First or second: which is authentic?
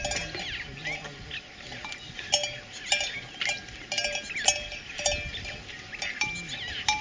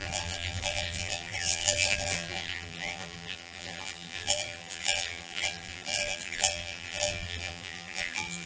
first